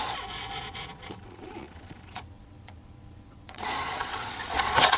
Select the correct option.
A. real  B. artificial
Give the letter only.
B